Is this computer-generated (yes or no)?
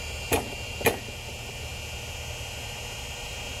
no